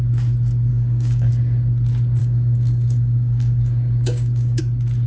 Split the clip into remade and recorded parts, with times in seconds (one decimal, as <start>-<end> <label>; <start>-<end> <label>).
0.0-0.7 recorded; 0.7-1.3 remade; 1.3-2.2 recorded; 2.2-4.6 remade; 4.6-5.1 recorded